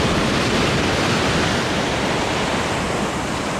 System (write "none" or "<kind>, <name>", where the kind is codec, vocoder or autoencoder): none